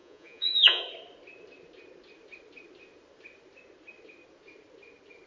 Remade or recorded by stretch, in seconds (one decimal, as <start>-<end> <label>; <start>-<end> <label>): 0.0-0.8 remade; 0.8-5.3 recorded

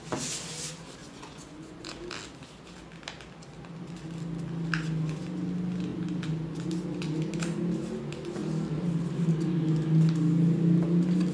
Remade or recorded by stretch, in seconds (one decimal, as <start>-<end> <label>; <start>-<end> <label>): 0.0-1.0 recorded; 1.0-2.1 remade; 2.1-11.3 recorded

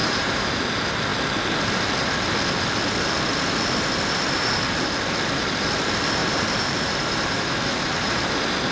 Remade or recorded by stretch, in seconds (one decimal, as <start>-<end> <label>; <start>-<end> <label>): 0.0-0.6 remade; 0.6-6.2 recorded; 6.2-8.7 remade

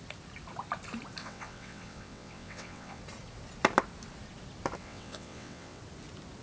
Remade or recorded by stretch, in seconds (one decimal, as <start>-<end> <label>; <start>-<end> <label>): 0.0-1.2 recorded; 1.2-3.0 remade; 3.0-4.8 recorded; 4.8-5.8 remade; 5.8-6.4 recorded